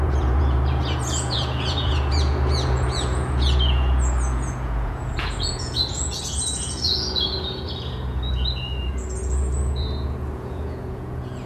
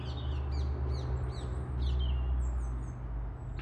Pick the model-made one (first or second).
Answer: first